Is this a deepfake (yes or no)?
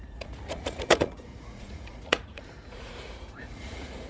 yes